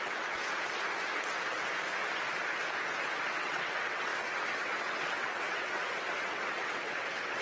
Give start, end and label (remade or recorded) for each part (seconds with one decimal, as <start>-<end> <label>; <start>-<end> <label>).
0.0-0.4 remade; 0.4-3.0 recorded; 3.0-7.4 remade

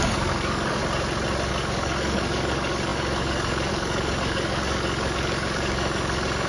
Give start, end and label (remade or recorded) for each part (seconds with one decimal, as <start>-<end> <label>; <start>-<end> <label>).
0.0-0.8 remade; 0.8-1.5 recorded; 1.5-6.5 remade